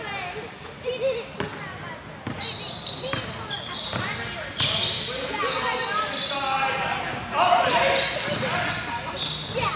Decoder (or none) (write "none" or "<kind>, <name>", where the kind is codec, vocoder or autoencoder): none